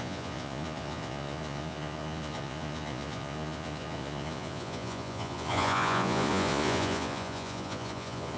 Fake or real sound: fake